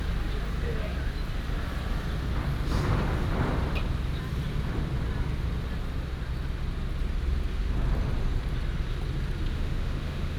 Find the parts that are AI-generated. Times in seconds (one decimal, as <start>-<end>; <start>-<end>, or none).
9.5-10.4